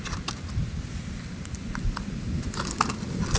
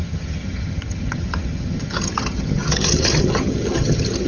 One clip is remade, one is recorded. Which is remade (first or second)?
second